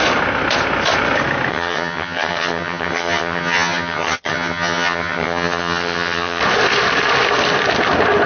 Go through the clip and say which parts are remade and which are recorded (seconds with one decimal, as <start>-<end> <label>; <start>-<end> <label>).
0.0-1.5 recorded; 1.5-6.4 remade; 6.4-8.3 recorded